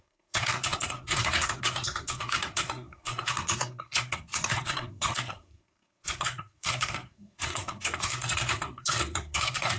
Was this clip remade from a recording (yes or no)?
yes